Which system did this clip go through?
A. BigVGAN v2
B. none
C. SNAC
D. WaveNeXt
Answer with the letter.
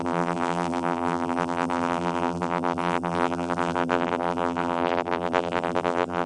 A